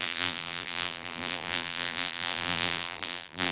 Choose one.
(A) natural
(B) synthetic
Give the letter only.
B